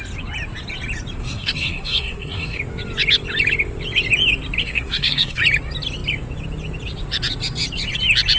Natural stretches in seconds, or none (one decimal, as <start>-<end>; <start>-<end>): 0.0-1.2; 2.6-4.6; 5.4-8.4